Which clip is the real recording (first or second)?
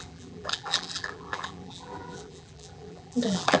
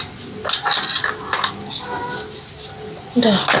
second